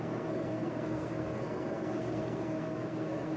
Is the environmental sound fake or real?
fake